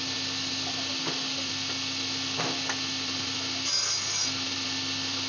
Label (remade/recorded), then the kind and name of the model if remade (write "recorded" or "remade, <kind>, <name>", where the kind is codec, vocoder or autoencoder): recorded